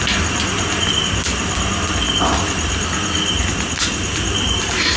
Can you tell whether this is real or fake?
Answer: real